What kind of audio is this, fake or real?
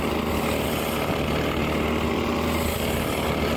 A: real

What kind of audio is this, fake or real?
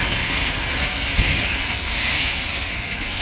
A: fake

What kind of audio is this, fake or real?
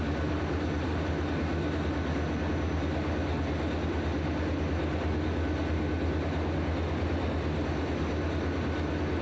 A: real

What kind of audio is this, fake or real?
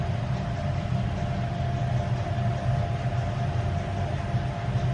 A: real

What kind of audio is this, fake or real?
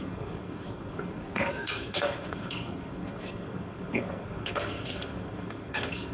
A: fake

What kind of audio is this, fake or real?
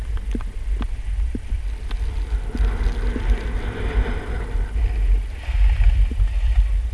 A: real